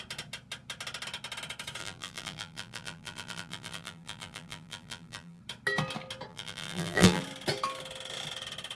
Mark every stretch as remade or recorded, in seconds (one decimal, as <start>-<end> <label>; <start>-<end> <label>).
0.0-1.8 recorded; 1.8-5.4 remade; 5.4-6.3 recorded; 6.3-7.2 remade; 7.2-8.7 recorded

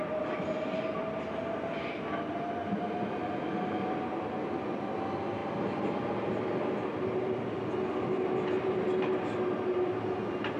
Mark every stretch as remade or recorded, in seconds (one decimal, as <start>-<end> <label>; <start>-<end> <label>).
0.0-10.6 recorded

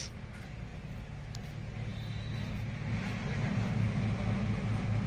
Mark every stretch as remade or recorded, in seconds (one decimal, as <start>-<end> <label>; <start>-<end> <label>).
0.0-5.1 recorded

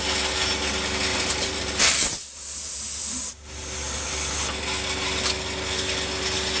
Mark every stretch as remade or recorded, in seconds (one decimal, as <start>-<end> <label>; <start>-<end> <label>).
0.0-1.1 recorded; 1.1-2.6 remade; 2.6-6.6 recorded

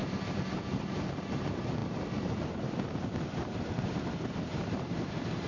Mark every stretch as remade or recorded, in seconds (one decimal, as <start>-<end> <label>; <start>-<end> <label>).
0.0-5.5 remade

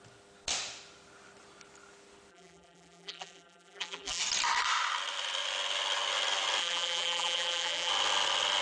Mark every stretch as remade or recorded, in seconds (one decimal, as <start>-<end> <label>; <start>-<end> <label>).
0.0-2.3 recorded; 2.3-4.2 remade; 4.2-6.6 recorded; 6.6-7.9 remade; 7.9-8.6 recorded